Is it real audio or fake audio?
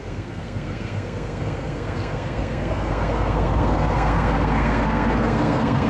fake